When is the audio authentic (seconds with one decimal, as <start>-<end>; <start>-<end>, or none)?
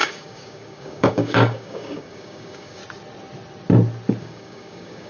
2.8-4.2